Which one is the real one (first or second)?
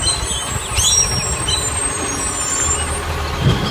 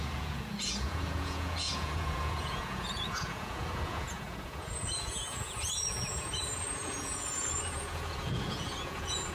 first